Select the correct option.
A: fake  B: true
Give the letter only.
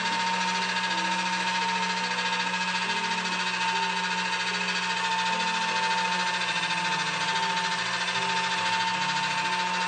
B